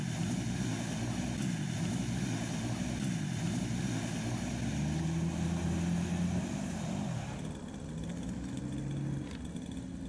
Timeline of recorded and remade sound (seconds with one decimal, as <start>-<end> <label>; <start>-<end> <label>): 0.0-8.1 recorded; 8.1-8.6 remade; 8.6-10.1 recorded